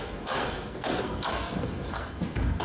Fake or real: fake